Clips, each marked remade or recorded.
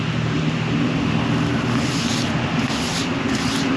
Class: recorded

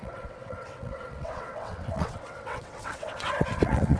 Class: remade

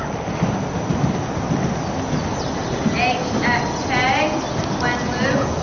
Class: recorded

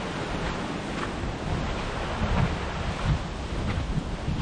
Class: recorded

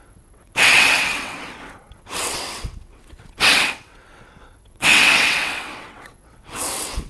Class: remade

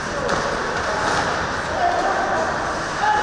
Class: recorded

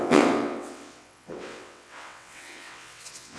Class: remade